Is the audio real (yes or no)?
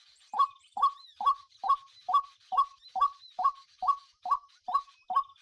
yes